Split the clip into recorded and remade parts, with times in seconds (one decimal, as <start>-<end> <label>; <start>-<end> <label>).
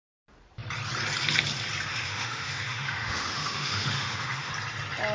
0.0-1.9 recorded; 1.9-4.5 remade; 4.5-5.1 recorded